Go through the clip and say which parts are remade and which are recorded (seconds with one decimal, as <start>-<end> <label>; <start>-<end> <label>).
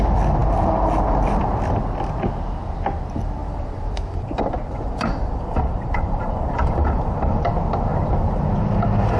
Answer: 0.0-3.4 recorded; 3.4-7.5 remade; 7.5-9.2 recorded